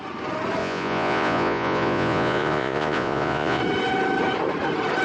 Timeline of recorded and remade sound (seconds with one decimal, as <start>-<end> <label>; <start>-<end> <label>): 0.0-0.6 recorded; 0.6-3.6 remade; 3.6-5.0 recorded

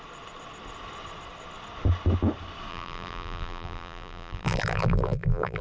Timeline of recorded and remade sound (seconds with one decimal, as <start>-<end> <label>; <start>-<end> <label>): 0.0-2.7 recorded; 2.7-5.6 remade

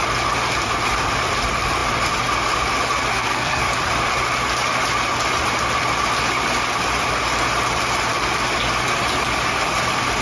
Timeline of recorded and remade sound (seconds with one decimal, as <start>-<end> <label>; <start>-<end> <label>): 0.0-3.1 recorded; 3.1-3.6 remade; 3.6-10.2 recorded

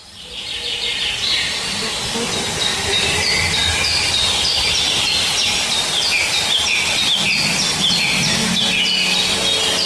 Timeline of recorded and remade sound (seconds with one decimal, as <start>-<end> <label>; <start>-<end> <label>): 0.0-9.9 recorded